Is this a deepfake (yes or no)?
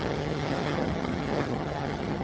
yes